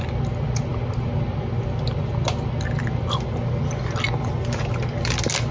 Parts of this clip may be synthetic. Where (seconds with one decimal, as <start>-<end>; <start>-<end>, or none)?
none